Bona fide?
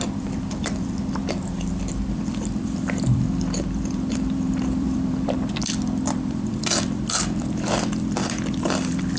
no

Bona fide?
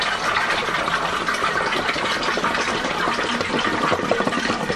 yes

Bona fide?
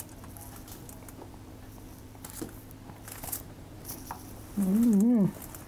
yes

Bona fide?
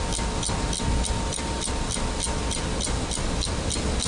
yes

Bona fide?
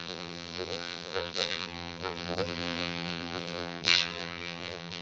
no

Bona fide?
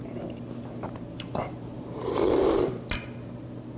yes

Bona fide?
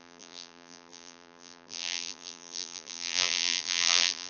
no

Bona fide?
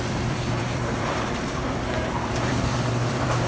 no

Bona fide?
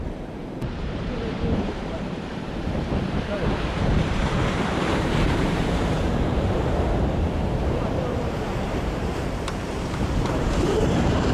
no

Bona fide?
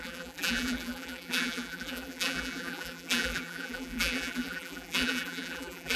no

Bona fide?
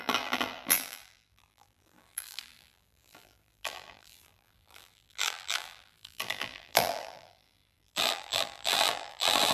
no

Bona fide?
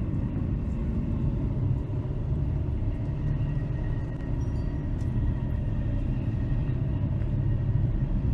no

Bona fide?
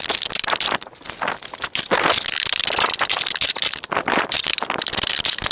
no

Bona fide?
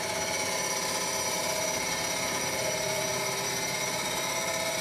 no